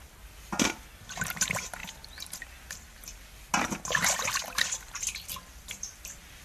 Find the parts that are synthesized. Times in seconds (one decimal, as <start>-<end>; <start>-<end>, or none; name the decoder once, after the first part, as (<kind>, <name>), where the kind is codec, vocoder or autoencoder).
none